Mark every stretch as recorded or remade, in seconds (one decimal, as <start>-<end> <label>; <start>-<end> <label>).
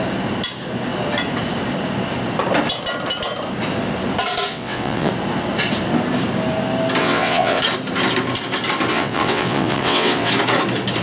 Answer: 0.0-4.5 recorded; 4.5-5.1 remade; 5.1-7.0 recorded; 7.0-7.6 remade; 7.6-8.9 recorded; 8.9-10.3 remade; 10.3-11.0 recorded